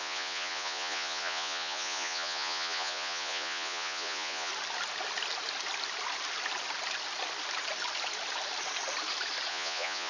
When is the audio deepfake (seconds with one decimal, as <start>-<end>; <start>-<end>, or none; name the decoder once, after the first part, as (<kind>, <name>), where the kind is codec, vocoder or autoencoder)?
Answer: 0.0-4.5 (vocoder, Vocos); 9.5-10.1